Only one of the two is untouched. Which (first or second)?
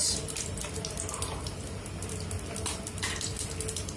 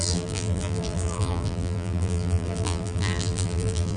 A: first